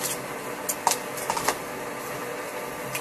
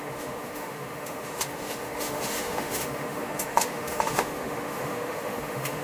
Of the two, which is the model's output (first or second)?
second